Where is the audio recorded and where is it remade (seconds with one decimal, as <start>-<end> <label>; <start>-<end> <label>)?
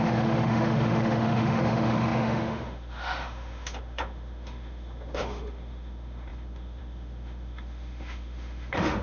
0.0-9.0 remade